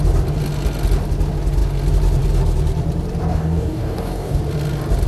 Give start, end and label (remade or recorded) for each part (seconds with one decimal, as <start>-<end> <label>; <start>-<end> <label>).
0.0-3.3 recorded; 3.3-4.4 remade; 4.4-5.1 recorded